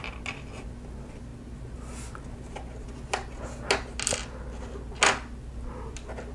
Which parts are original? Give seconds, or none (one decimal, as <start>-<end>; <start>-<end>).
0.0-6.3